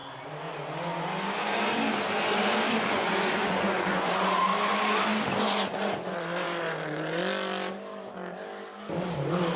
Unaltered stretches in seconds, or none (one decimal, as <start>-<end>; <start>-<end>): 0.0-2.8; 4.5-5.4; 7.2-9.6